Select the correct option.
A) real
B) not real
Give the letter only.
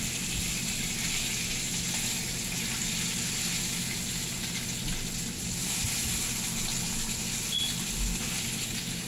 A